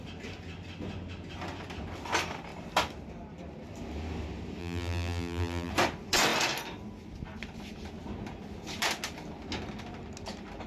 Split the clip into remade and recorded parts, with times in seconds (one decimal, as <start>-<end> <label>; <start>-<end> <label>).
0.0-4.6 recorded; 4.6-5.7 remade; 5.7-10.7 recorded